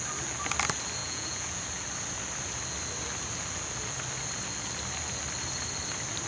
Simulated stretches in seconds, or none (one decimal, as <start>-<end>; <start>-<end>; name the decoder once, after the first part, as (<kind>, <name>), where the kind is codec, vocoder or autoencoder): 1.0-1.6 (vocoder, Vocos)